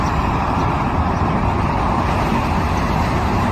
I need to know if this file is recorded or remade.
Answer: recorded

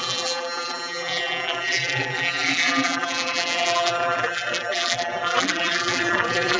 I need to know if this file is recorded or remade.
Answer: remade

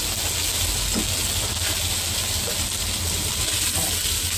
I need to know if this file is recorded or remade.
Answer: recorded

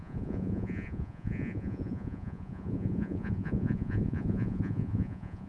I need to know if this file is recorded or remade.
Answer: remade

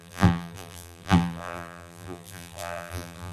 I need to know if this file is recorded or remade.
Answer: remade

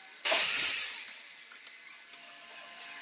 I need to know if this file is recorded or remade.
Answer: recorded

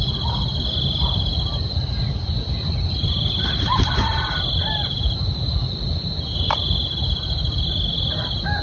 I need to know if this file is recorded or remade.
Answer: recorded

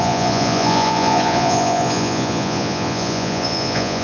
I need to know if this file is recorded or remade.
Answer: remade